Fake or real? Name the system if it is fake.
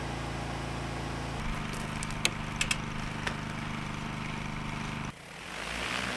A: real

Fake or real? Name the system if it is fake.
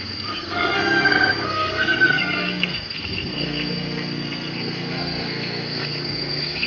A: fake, codec, SNAC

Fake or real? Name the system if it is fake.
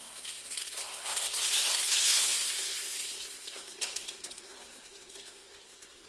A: fake, codec, SNAC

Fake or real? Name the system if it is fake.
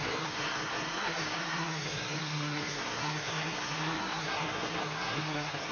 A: fake, codec, SNAC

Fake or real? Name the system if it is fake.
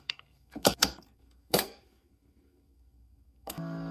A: fake, codec, SNAC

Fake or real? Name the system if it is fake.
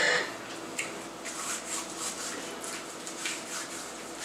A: real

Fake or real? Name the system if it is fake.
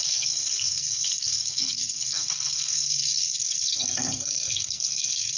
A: fake, codec, SNAC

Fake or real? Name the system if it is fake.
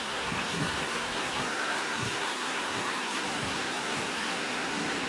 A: fake, codec, SNAC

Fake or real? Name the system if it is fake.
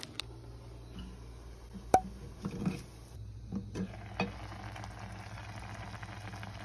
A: real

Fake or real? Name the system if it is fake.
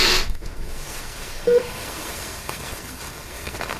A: fake, codec, SNAC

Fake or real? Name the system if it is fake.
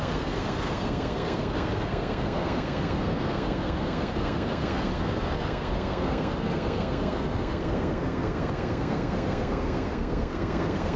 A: fake, codec, SNAC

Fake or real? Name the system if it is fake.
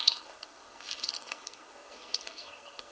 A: fake, codec, SNAC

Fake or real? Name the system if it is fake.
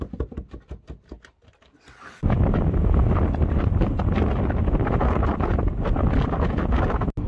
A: real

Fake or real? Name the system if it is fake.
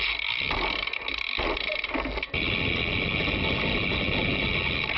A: real